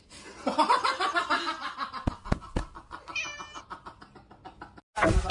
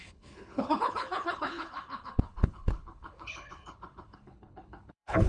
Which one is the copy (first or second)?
second